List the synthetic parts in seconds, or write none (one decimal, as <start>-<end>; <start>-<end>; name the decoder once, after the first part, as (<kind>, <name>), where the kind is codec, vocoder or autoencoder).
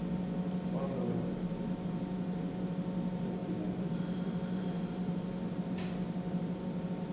none